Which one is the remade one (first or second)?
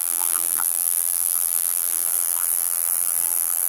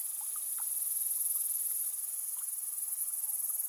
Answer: first